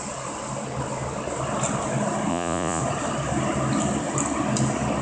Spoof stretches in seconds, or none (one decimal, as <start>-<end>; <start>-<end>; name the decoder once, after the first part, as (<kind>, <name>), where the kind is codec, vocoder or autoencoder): 2.3-2.8 (vocoder, Vocos)